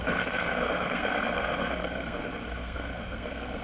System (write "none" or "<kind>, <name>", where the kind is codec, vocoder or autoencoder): codec, SNAC